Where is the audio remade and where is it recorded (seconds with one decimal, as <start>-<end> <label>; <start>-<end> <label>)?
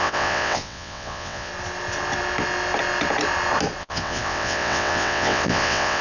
0.0-1.5 remade; 1.5-3.8 recorded; 3.8-6.0 remade